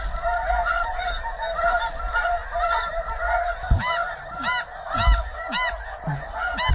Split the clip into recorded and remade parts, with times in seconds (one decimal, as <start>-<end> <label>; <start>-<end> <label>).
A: 0.0-6.7 recorded